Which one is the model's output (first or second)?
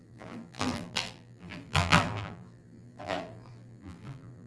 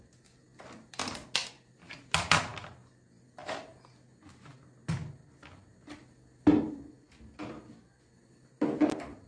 first